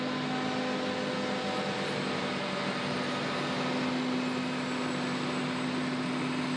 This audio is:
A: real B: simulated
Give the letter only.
A